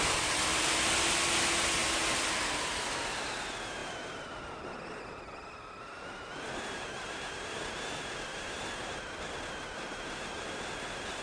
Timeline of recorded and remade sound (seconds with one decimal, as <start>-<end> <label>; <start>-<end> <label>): 0.0-11.2 recorded